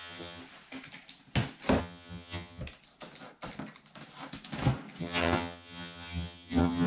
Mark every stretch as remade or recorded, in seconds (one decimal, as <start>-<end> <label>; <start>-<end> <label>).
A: 0.0-0.4 remade; 0.4-1.8 recorded; 1.8-2.6 remade; 2.6-5.0 recorded; 5.0-6.9 remade